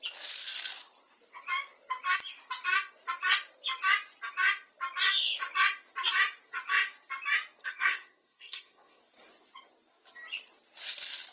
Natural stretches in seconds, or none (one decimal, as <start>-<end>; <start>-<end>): 0.0-7.6; 9.0-11.3